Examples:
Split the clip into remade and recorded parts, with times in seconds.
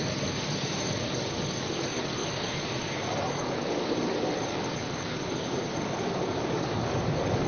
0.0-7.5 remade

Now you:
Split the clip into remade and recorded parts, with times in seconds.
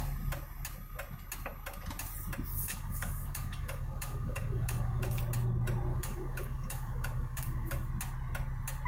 0.0-2.5 recorded; 2.5-5.2 remade; 5.2-5.9 recorded; 5.9-7.9 remade; 7.9-8.9 recorded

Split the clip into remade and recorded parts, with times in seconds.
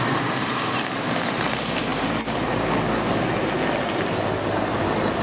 0.0-5.2 recorded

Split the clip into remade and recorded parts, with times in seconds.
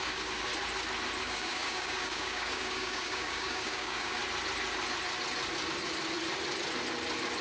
0.0-0.5 remade; 0.5-1.2 recorded; 1.2-4.2 remade; 4.2-7.4 recorded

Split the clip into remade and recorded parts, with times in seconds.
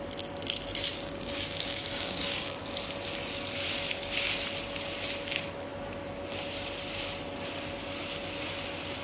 0.0-0.9 recorded; 0.9-2.6 remade; 2.6-9.0 recorded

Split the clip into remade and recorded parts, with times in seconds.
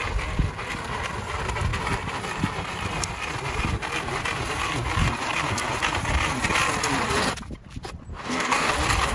0.0-8.1 recorded; 8.1-8.7 remade; 8.7-9.1 recorded